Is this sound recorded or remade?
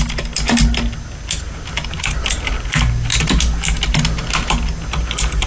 recorded